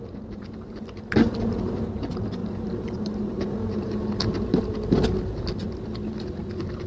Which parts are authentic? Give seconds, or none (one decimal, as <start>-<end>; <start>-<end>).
0.0-2.4; 3.9-6.9